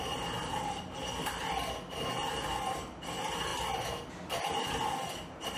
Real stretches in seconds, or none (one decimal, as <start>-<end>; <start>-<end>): 0.0-5.6